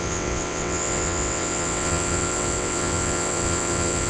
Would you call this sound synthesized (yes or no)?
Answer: yes